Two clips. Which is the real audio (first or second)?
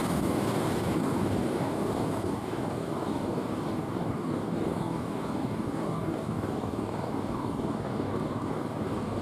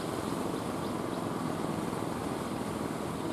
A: second